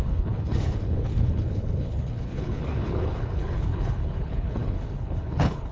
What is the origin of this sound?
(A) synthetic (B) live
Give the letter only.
A